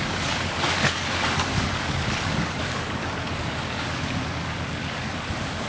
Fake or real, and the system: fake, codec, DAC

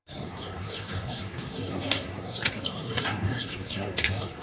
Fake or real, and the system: fake, codec, SNAC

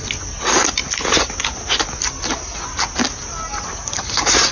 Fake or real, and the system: real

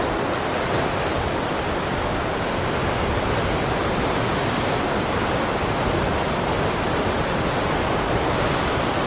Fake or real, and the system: real